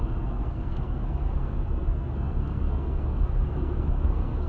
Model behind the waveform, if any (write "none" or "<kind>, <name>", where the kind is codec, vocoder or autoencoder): codec, SNAC